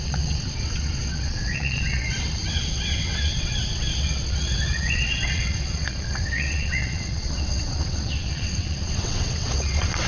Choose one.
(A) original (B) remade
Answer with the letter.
B